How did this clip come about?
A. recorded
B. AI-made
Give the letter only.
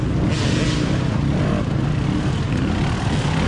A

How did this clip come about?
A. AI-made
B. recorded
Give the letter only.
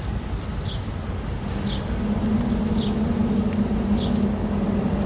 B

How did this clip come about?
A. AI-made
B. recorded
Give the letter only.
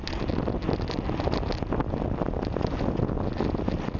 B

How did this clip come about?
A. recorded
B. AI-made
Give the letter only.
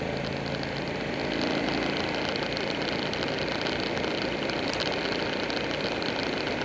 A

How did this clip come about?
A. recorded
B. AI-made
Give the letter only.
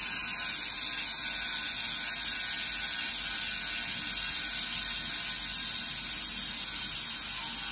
A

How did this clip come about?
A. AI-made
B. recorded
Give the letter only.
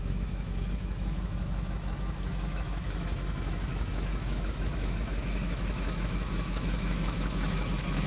A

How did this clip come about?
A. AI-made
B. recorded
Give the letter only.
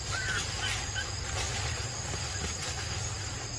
B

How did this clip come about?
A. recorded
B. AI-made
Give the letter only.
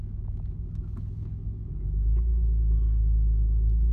B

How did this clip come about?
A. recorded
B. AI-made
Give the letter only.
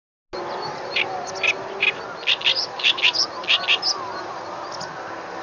A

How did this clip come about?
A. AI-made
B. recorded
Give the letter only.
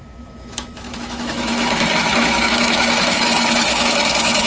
A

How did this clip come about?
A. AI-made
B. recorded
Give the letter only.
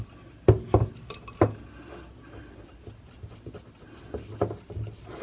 B